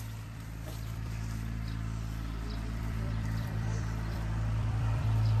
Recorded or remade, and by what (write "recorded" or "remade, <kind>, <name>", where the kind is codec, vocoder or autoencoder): remade, vocoder, BigVGAN v2